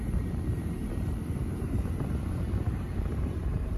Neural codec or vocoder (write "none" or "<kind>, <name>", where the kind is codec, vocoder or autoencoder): vocoder, BigVGAN v2